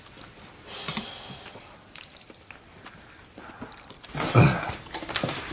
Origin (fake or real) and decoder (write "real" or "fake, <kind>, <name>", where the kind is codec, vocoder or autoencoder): real